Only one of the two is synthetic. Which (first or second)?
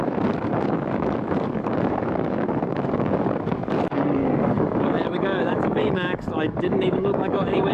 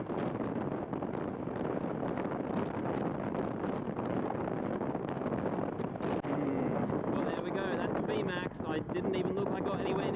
first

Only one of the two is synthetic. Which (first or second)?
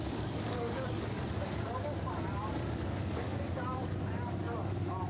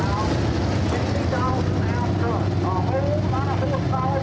first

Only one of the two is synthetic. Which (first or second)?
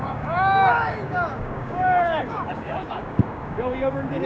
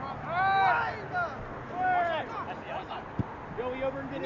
first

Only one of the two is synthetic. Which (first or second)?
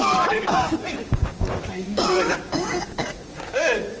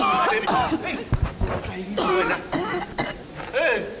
first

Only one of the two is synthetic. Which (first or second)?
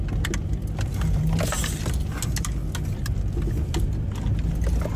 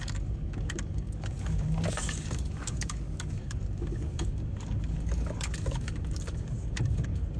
second